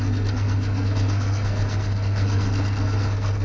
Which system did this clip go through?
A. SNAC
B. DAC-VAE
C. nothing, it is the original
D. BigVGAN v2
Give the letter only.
A